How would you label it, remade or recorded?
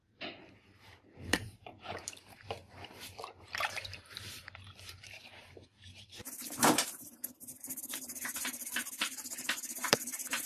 remade